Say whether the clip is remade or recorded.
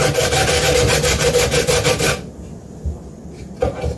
recorded